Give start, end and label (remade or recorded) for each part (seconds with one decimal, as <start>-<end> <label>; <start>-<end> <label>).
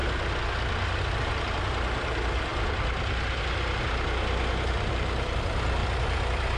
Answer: 0.0-6.6 recorded